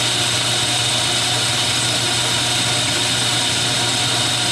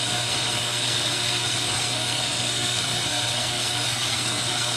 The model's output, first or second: second